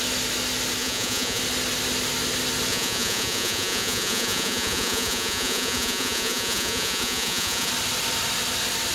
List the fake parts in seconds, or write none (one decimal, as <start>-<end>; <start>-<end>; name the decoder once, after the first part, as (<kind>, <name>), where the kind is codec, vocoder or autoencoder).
0.8-1.4 (vocoder, Vocos); 2.7-7.7